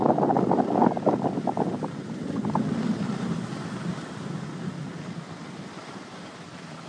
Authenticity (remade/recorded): recorded